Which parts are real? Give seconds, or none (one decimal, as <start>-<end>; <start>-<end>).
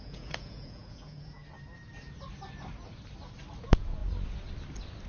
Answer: 1.4-3.6; 4.0-5.1